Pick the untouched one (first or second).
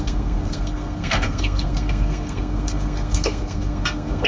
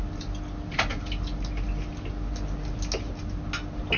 second